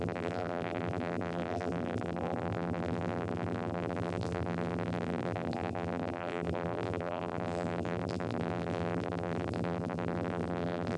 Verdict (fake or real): fake